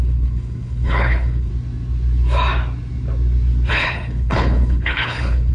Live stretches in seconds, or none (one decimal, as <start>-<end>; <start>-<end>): 1.5-3.7